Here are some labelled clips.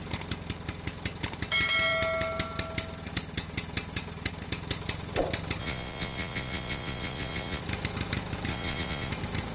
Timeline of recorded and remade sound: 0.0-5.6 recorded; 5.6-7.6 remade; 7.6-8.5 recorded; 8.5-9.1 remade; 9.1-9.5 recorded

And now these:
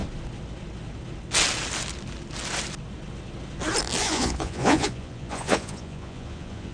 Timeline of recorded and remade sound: 0.0-4.0 recorded; 4.0-6.7 remade

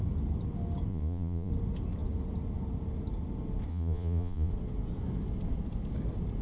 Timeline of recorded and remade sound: 0.0-0.9 recorded; 0.9-1.5 remade; 1.5-3.7 recorded; 3.7-4.5 remade; 4.5-6.4 recorded

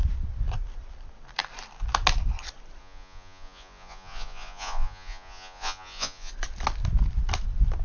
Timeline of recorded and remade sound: 0.0-2.8 recorded; 2.8-6.3 remade; 6.3-7.8 recorded

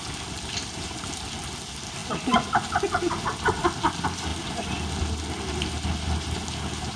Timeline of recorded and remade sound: 0.0-7.0 recorded

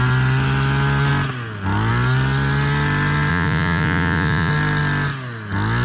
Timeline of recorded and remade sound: 0.0-3.3 recorded; 3.3-4.5 remade; 4.5-5.8 recorded

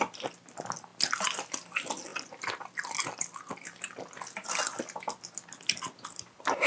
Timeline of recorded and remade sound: 0.0-6.7 recorded